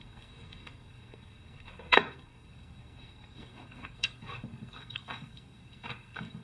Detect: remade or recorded remade